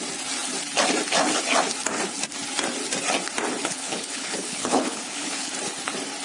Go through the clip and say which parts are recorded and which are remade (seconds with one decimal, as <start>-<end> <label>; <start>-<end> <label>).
0.0-3.6 recorded; 3.6-5.5 remade; 5.5-6.2 recorded